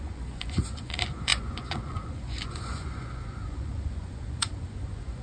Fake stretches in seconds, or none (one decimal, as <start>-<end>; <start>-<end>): 0.0-5.2